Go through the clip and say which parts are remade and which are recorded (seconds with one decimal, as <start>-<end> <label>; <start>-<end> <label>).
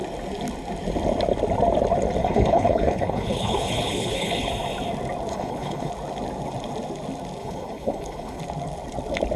0.0-2.2 recorded; 2.2-4.5 remade; 4.5-5.3 recorded; 5.3-5.9 remade; 5.9-7.4 recorded; 7.4-8.4 remade; 8.4-9.4 recorded